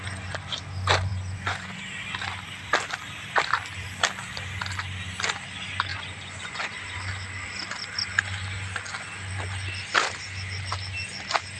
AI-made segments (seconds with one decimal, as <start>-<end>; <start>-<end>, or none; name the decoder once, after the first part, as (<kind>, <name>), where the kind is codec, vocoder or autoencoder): 1.1-1.8 (vocoder, Vocos); 5.9-6.8